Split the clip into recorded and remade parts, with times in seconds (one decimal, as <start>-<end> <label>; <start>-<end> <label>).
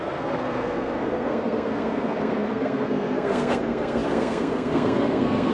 0.0-5.5 remade